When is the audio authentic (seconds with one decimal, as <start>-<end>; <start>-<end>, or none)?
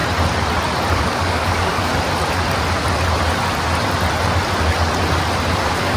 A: 0.0-0.9; 1.9-5.5